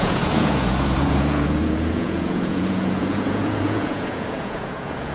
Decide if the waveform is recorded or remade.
remade